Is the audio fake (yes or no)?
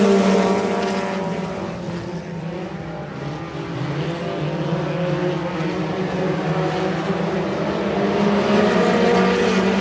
no